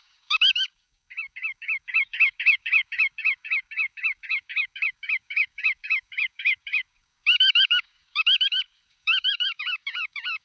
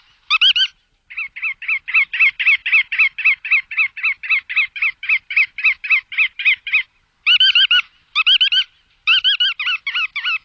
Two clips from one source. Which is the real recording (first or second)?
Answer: second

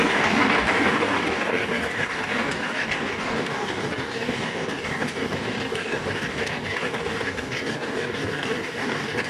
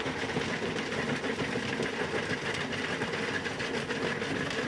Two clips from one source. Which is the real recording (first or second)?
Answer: second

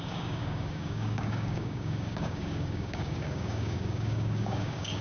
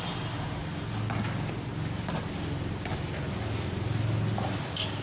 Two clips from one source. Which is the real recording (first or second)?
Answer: second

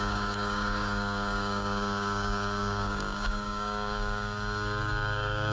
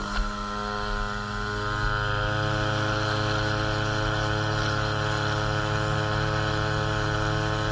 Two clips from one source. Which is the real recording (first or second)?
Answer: second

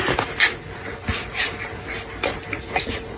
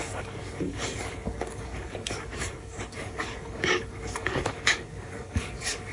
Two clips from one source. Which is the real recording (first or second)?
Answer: first